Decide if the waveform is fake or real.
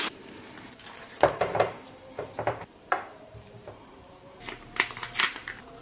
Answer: fake